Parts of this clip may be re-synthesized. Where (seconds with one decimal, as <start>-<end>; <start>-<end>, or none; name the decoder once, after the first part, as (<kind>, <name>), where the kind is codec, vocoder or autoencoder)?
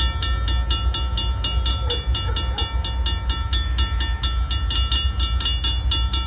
none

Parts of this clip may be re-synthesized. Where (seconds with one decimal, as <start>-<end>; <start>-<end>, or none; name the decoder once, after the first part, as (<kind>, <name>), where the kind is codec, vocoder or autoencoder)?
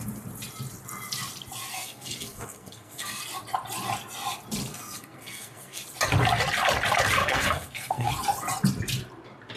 1.7-3.2 (codec, SNAC); 4.7-5.8; 7.2-8.1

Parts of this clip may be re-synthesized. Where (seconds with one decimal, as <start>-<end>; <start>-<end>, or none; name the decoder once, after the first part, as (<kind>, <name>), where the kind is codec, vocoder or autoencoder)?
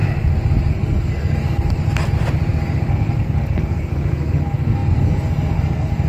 0.7-1.8 (codec, SNAC); 2.9-6.1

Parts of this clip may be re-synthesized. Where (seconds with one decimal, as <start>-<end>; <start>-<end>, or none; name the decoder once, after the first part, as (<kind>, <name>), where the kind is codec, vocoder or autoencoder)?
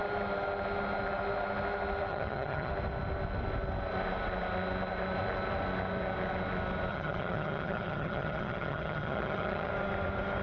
2.1-2.7 (vocoder, HiFi-GAN); 6.9-9.7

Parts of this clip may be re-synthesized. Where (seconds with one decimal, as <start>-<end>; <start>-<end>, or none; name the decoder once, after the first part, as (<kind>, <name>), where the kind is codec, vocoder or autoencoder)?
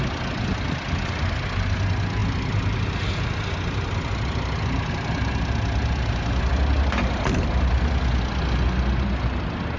none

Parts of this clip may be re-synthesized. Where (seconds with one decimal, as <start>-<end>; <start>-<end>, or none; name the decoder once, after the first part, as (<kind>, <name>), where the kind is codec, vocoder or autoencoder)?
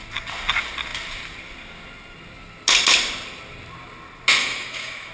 4.4-5.1 (autoencoder, DAC-VAE)